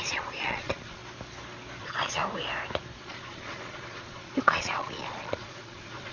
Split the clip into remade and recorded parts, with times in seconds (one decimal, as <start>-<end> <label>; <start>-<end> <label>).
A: 0.0-1.0 remade; 1.0-1.8 recorded; 1.8-2.2 remade; 2.2-3.0 recorded; 3.0-6.1 remade

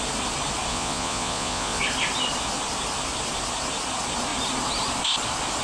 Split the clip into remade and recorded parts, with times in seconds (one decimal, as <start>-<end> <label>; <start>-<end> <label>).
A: 0.0-0.7 recorded; 0.7-1.8 remade; 1.8-5.6 recorded

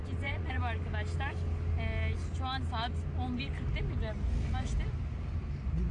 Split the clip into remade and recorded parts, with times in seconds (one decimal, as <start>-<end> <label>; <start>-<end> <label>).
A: 0.0-0.6 remade; 0.6-5.9 recorded

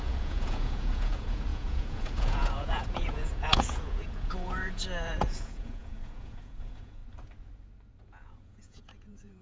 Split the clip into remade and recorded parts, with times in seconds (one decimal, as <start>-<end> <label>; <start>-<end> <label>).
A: 0.0-7.0 remade; 7.0-8.0 recorded; 8.0-9.4 remade

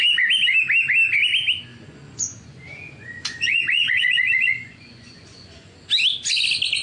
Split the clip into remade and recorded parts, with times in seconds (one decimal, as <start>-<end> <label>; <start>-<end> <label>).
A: 0.0-1.7 recorded; 1.7-5.8 remade; 5.8-6.8 recorded

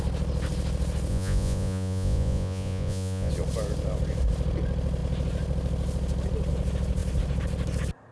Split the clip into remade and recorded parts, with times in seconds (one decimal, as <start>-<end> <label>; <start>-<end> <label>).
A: 0.0-1.1 recorded; 1.1-3.3 remade; 3.3-8.1 recorded

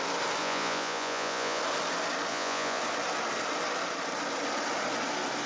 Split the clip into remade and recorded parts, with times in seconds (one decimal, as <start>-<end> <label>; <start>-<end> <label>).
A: 0.0-0.4 recorded; 0.4-1.6 remade; 1.6-2.3 recorded; 2.3-2.8 remade; 2.8-5.5 recorded

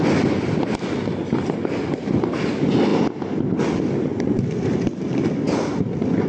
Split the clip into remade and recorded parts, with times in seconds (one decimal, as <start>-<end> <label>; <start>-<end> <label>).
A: 0.0-6.3 recorded